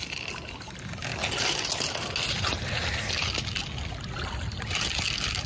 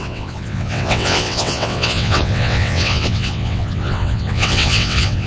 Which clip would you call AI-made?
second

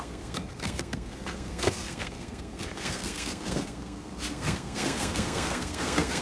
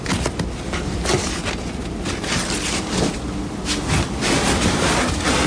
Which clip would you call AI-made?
first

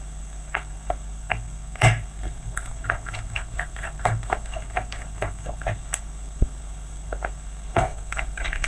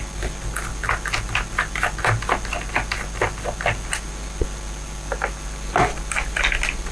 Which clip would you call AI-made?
first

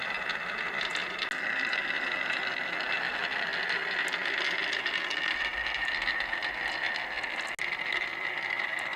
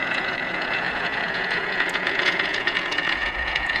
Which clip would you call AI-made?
second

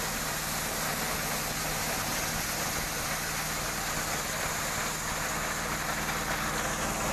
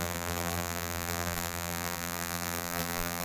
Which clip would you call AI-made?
second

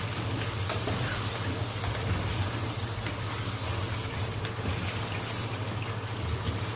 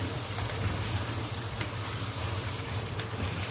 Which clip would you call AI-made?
second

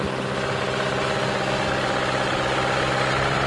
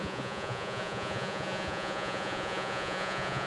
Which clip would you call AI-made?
second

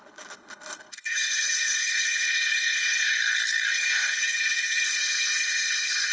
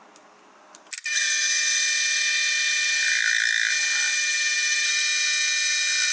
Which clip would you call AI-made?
first